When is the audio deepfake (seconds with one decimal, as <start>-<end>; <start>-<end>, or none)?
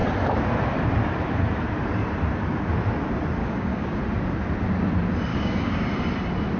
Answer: 3.4-4.0; 5.3-5.9